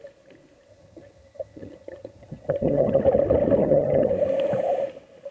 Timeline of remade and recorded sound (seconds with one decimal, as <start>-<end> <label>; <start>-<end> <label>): 0.0-0.7 recorded; 0.7-3.0 remade; 3.0-3.6 recorded; 3.6-4.1 remade; 4.1-5.3 recorded

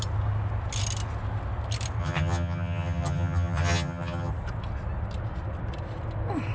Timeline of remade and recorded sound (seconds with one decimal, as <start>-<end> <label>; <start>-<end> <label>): 0.0-2.0 recorded; 2.0-4.3 remade; 4.3-6.5 recorded

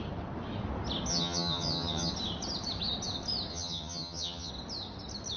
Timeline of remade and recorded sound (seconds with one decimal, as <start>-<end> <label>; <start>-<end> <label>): 0.0-1.1 recorded; 1.1-2.1 remade; 2.1-3.5 recorded; 3.5-4.5 remade; 4.5-5.4 recorded

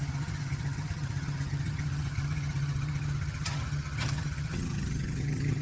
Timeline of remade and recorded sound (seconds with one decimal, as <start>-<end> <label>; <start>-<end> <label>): 0.0-5.6 remade

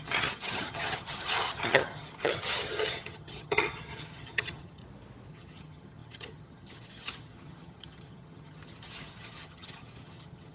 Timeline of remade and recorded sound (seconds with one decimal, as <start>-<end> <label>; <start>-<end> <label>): 0.0-4.8 remade; 4.8-5.3 recorded; 5.3-10.5 remade